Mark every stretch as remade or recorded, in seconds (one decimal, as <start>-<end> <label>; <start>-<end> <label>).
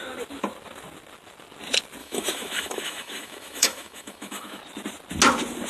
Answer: 0.0-2.0 recorded; 2.0-4.6 remade; 4.6-5.7 recorded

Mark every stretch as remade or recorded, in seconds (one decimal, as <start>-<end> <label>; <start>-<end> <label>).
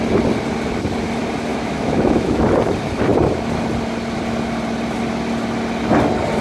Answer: 0.0-1.5 recorded; 1.5-2.4 remade; 2.4-6.4 recorded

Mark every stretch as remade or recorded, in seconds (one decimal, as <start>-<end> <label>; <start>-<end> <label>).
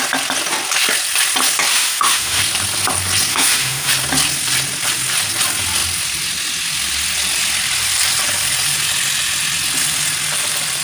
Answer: 0.0-1.7 recorded; 1.7-2.4 remade; 2.4-3.3 recorded; 3.3-3.9 remade; 3.9-10.8 recorded